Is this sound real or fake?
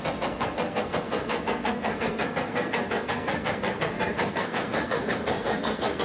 fake